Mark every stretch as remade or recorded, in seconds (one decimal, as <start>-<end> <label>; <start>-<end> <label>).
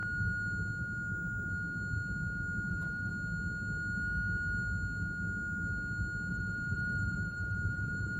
0.0-2.7 recorded; 2.7-3.1 remade; 3.1-6.3 recorded; 6.3-8.2 remade